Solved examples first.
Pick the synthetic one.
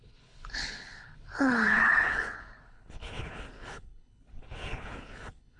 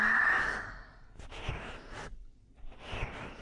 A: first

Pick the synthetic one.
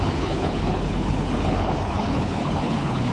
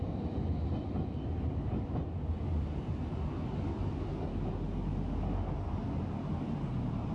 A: first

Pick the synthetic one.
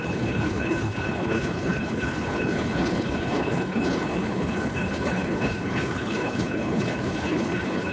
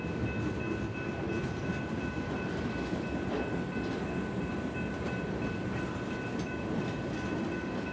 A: first